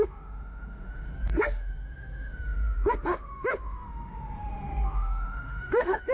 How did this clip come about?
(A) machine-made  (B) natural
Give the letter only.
A